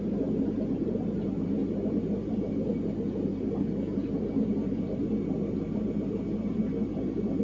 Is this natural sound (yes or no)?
yes